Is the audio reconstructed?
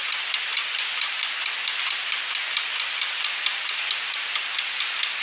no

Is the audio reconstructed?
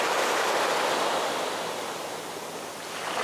no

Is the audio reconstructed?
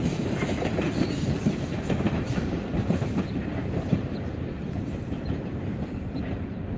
yes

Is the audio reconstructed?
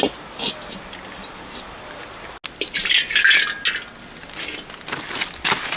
no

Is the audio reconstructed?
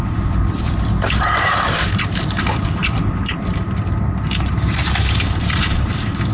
yes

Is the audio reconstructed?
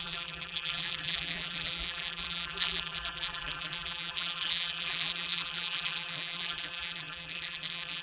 yes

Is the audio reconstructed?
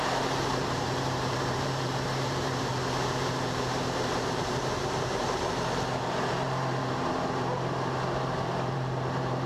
yes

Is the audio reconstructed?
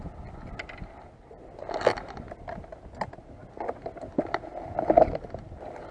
no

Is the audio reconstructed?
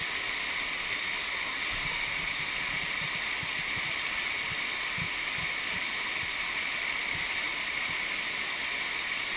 no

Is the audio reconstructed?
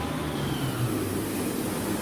no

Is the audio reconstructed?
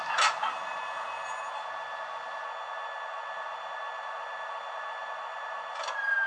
no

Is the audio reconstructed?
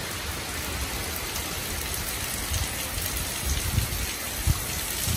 no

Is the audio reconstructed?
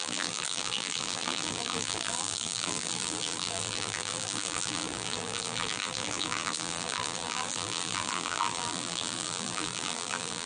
yes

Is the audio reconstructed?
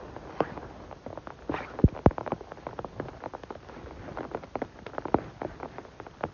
no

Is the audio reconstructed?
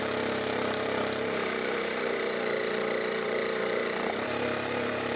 yes